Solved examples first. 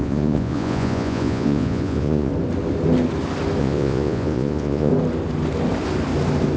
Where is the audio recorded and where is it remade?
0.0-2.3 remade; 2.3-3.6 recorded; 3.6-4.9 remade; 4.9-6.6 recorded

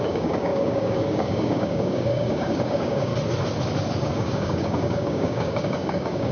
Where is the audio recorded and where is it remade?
0.0-3.1 remade; 3.1-4.0 recorded; 4.0-6.3 remade

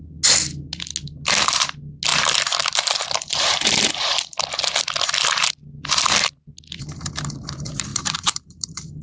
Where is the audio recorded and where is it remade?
0.0-7.9 recorded; 7.9-9.0 remade

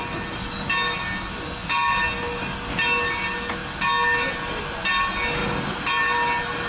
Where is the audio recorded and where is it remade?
0.0-6.7 recorded

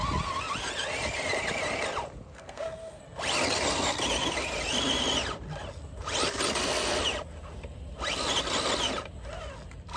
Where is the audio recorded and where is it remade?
0.0-2.3 recorded; 2.3-3.0 remade; 3.0-10.0 recorded